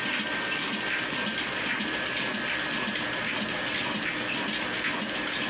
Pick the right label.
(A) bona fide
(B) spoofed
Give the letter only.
A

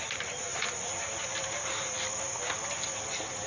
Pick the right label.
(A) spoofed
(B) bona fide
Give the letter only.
B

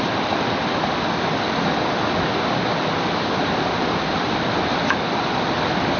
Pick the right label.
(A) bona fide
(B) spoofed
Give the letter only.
A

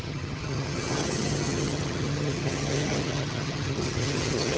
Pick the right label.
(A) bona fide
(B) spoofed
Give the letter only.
B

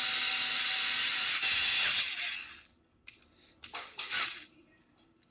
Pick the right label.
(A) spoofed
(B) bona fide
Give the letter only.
B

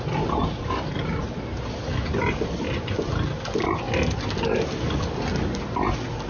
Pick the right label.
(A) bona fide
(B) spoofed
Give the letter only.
A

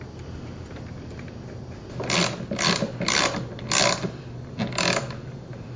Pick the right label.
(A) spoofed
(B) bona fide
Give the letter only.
B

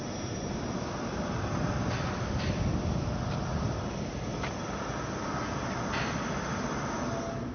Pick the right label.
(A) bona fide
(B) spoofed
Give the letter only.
A